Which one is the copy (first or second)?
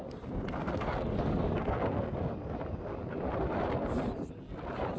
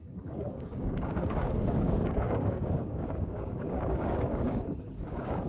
second